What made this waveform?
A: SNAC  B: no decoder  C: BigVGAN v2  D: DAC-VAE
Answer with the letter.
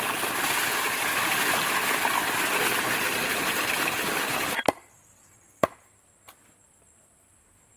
B